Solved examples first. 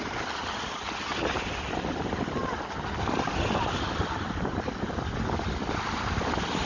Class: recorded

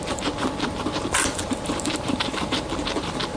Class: remade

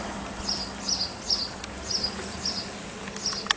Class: recorded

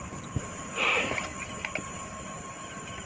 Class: remade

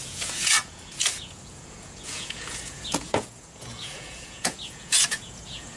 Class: remade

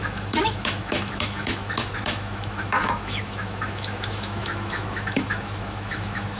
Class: remade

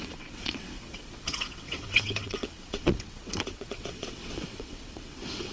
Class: remade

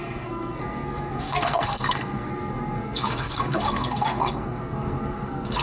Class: remade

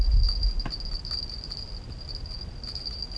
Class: recorded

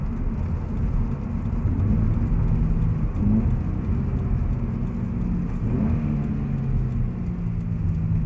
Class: recorded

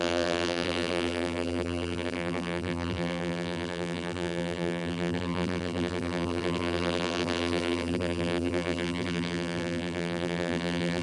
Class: remade